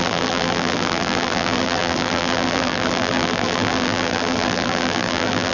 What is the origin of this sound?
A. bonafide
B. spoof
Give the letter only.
B